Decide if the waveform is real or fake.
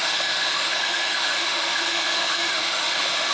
fake